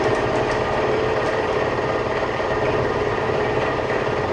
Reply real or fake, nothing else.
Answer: fake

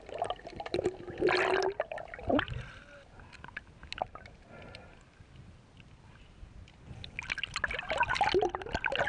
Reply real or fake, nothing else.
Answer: real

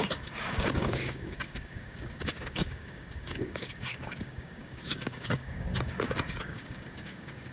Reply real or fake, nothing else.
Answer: fake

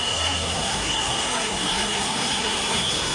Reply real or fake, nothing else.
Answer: fake